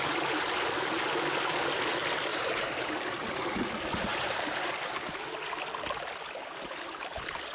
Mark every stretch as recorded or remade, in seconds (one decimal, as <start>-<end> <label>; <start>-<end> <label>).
0.0-2.3 recorded; 2.3-3.0 remade; 3.0-4.1 recorded; 4.1-4.9 remade; 4.9-7.5 recorded